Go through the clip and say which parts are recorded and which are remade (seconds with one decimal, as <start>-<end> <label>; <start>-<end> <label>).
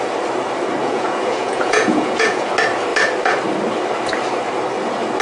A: 0.0-0.8 recorded; 0.8-2.5 remade; 2.5-5.2 recorded